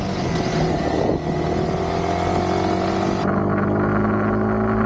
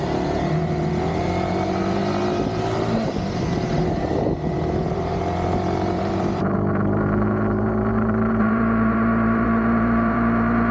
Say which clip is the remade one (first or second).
second